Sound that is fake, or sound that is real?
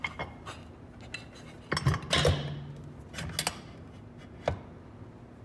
real